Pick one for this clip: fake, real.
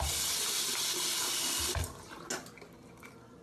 real